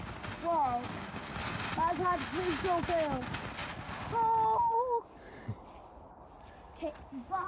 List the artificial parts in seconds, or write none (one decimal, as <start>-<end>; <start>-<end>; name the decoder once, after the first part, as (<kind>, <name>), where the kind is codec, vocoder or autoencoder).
0.4-1.3 (codec, DAC)